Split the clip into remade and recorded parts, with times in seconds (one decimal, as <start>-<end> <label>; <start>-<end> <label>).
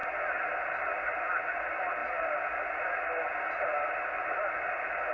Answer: 0.0-5.1 recorded